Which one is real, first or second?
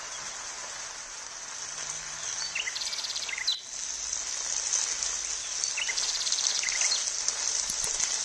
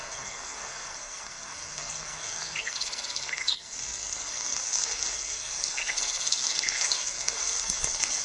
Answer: first